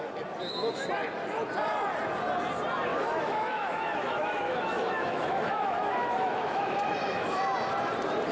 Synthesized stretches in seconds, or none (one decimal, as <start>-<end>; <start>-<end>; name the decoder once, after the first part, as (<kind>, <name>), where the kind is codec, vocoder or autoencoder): 2.9-7.4 (autoencoder, DAC-VAE)